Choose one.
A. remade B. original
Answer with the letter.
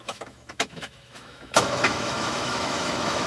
A